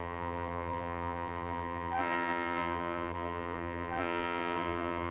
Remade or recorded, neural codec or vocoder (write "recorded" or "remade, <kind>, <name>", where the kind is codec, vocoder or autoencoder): remade, vocoder, BigVGAN v2